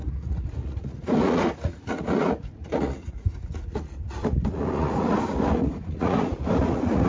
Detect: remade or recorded remade